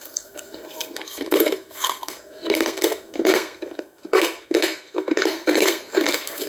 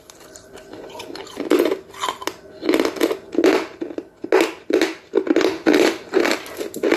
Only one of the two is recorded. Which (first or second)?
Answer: second